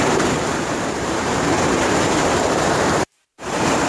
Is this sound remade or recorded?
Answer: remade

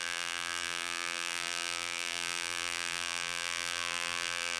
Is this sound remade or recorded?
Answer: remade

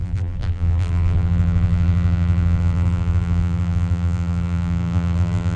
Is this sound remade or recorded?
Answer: remade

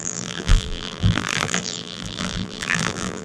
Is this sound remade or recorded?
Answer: remade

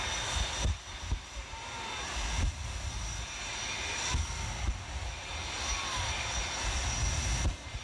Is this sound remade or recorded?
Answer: recorded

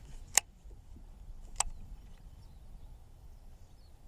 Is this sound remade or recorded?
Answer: remade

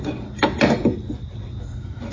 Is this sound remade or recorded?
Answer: recorded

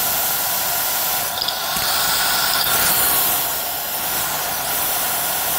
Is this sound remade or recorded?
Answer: recorded